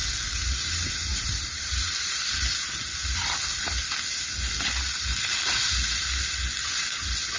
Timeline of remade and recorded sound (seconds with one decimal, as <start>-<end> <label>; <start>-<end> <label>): 0.0-1.1 recorded; 1.1-2.3 remade; 2.3-7.4 recorded